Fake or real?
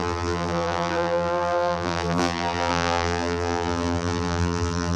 fake